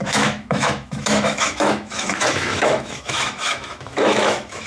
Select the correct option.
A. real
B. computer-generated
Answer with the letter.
B